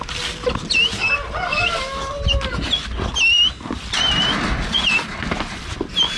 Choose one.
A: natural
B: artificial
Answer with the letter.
A